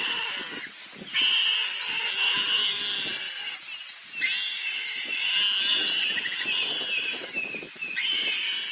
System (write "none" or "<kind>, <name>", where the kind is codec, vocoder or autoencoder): none